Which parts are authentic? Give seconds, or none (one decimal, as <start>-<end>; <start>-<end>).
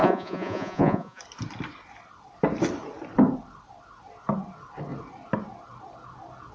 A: 1.2-6.5